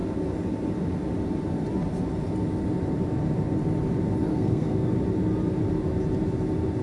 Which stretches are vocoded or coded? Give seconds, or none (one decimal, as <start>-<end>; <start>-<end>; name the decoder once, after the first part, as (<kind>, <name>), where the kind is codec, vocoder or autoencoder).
4.3-4.9 (codec, SNAC)